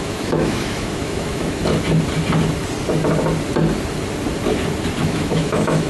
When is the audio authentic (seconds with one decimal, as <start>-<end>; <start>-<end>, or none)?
1.6-5.0